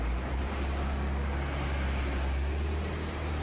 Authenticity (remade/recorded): recorded